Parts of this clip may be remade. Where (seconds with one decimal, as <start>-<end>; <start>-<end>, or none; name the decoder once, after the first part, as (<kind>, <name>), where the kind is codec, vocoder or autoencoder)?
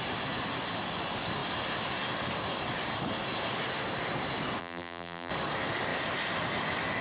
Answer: 4.6-5.3 (vocoder, BigVGAN v2)